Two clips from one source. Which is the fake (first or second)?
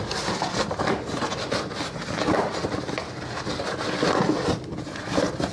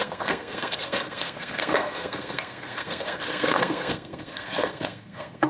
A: second